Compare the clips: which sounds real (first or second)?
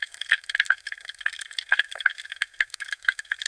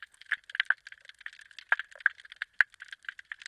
second